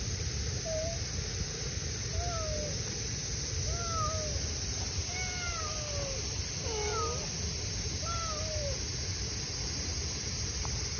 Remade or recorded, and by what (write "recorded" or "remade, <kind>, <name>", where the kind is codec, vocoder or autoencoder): recorded